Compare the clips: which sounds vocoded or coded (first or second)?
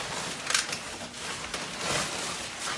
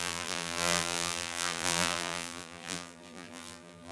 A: second